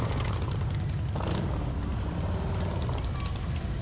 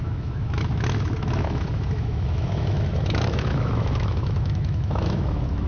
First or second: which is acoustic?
first